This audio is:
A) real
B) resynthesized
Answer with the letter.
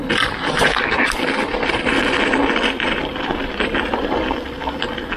A